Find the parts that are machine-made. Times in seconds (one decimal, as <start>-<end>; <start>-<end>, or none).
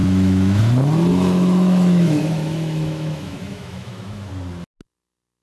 0.0-0.6; 1.1-4.3